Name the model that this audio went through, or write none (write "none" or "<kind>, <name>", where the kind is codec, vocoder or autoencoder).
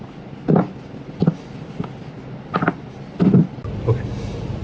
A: none